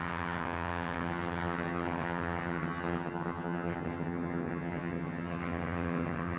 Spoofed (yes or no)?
yes